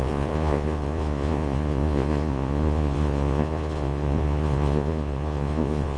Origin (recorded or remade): remade